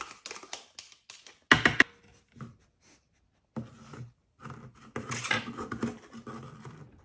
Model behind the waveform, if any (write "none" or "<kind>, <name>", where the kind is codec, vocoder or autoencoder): none